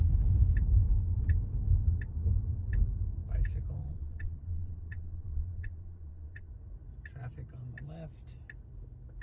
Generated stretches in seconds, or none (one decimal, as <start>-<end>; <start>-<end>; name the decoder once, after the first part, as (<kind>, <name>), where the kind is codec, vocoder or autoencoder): 3.8-6.5 (vocoder, Vocos)